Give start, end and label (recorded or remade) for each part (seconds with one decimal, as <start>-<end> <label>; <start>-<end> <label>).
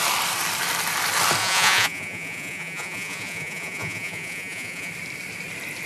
0.0-1.4 recorded; 1.4-4.9 remade; 4.9-5.9 recorded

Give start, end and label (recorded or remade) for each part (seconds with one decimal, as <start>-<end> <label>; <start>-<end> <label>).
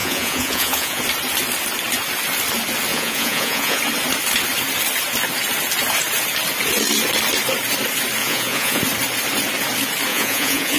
0.0-1.0 remade; 1.0-2.9 recorded; 2.9-3.8 remade; 3.8-8.2 recorded; 8.2-8.8 remade; 8.8-10.1 recorded; 10.1-10.8 remade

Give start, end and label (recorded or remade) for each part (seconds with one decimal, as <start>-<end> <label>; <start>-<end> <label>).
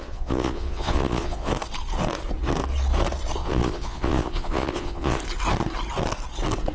0.0-1.5 remade; 1.5-3.4 recorded; 3.4-5.2 remade; 5.2-6.7 recorded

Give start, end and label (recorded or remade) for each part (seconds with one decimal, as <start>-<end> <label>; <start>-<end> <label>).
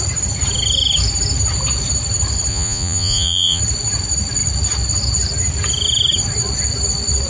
0.0-2.5 recorded; 2.5-3.6 remade; 3.6-7.3 recorded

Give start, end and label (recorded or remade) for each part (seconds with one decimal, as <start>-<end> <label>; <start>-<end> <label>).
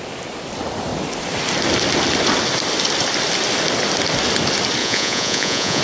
0.0-4.8 recorded; 4.8-5.8 remade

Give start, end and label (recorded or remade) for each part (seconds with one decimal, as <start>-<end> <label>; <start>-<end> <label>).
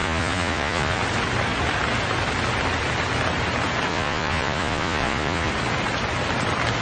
0.0-1.0 remade; 1.0-3.9 recorded; 3.9-5.5 remade; 5.5-6.8 recorded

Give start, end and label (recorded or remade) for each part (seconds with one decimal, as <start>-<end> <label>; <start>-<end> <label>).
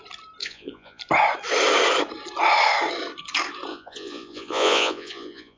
0.0-0.4 recorded; 0.4-1.0 remade; 1.0-3.7 recorded; 3.7-5.6 remade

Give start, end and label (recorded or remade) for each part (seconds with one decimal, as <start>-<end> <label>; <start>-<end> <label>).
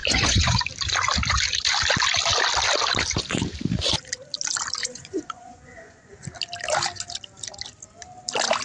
0.0-0.6 remade; 0.6-4.8 recorded; 4.8-6.1 remade; 6.1-8.6 recorded